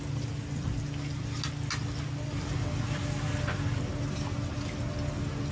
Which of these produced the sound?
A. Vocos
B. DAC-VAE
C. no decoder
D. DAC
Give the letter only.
C